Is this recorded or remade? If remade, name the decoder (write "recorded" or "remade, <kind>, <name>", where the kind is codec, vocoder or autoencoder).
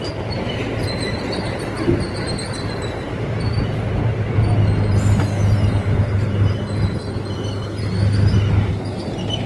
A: recorded